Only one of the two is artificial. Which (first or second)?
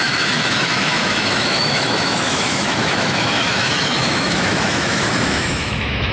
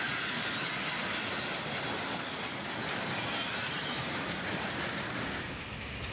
first